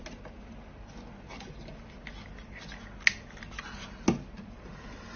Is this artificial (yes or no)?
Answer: no